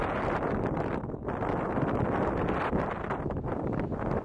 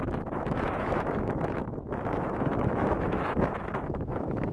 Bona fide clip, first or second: first